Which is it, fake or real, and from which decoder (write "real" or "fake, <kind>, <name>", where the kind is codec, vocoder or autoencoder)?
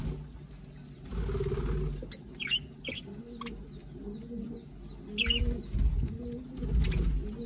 real